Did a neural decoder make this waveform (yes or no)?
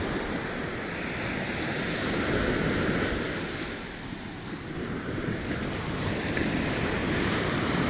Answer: no